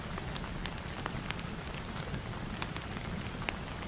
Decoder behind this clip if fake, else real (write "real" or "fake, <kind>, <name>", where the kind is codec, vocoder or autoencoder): real